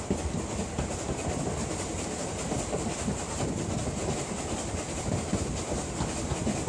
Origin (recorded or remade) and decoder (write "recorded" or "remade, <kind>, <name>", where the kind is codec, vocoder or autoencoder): recorded